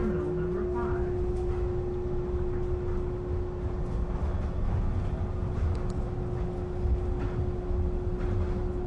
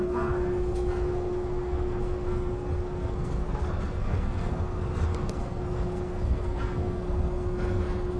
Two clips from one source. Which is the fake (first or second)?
second